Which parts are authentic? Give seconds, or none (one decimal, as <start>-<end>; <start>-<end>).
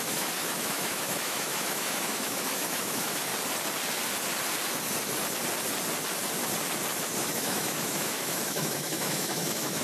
3.3-7.2